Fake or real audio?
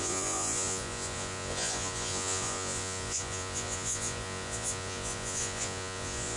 fake